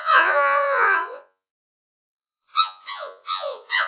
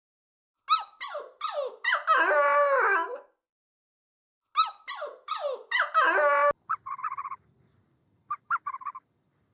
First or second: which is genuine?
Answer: second